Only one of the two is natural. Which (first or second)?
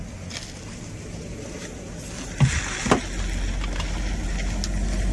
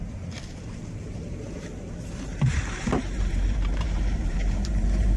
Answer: first